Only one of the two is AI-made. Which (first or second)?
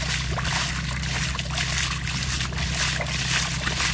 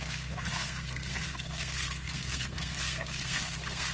second